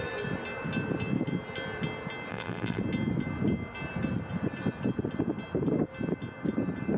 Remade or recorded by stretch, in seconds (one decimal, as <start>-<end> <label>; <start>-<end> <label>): 0.0-2.3 recorded; 2.3-2.8 remade; 2.8-7.0 recorded